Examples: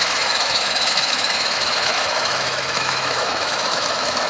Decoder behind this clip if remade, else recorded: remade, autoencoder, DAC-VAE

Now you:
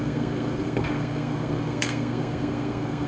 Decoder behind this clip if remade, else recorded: remade, codec, SNAC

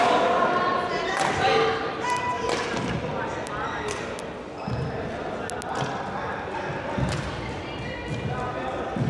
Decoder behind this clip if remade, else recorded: recorded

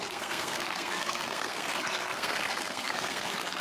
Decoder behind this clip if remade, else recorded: remade, codec, SNAC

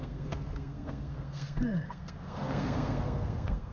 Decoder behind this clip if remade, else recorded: remade, codec, SNAC